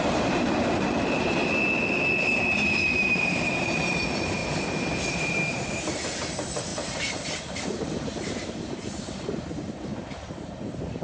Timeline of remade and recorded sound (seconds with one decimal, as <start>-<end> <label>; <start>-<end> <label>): 0.0-1.4 remade; 1.4-2.4 recorded; 2.4-4.4 remade; 4.4-5.1 recorded; 5.1-11.0 remade

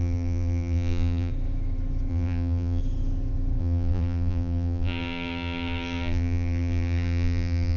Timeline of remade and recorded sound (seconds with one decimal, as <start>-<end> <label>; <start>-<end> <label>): 0.0-1.3 remade; 1.3-2.1 recorded; 2.1-2.8 remade; 2.8-3.6 recorded; 3.6-7.8 remade